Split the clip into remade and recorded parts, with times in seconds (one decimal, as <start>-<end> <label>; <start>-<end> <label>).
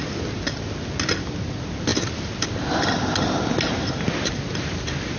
0.0-5.2 recorded